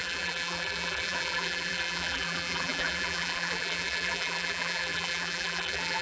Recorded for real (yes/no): no